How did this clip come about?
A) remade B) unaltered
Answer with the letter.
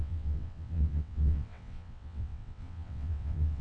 A